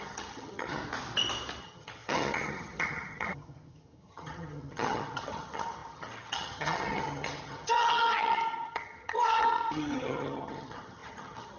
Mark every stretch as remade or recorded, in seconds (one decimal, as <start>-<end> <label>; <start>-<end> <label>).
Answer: 0.0-0.8 remade; 0.8-1.6 recorded; 1.6-11.6 remade